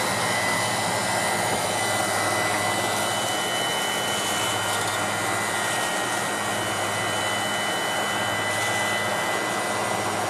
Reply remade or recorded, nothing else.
recorded